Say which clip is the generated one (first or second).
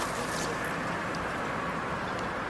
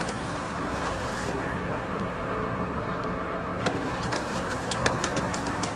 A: second